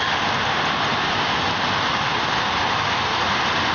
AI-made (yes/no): no